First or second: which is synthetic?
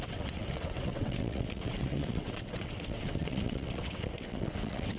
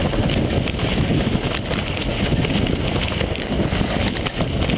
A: first